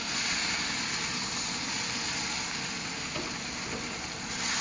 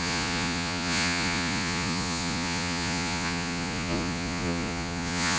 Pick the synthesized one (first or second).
second